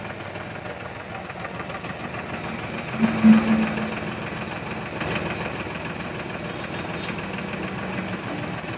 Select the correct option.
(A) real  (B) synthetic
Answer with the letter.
A